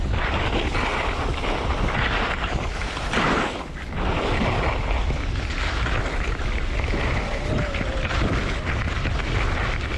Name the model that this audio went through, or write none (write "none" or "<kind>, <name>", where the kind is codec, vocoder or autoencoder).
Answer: none